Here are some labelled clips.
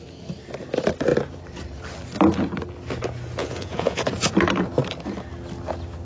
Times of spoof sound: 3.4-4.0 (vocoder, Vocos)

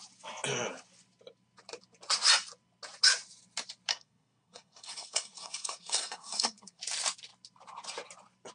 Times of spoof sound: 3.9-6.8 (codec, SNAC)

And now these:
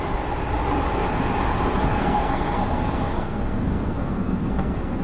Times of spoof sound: 1.9-5.0 (codec, SNAC)

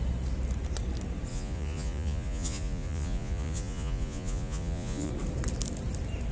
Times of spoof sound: 1.3-5.1 (vocoder, Vocos)

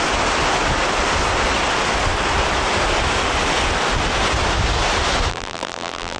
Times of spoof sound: 5.3-6.2 (vocoder, BigVGAN v2)

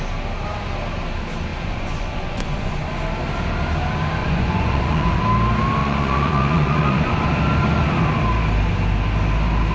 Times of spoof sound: 1.5-2.9 (vocoder, Vocos); 4.2-5.2; 5.8-7.1